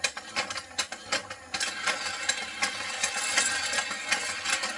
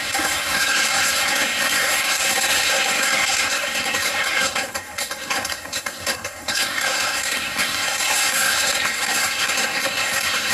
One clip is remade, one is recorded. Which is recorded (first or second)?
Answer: first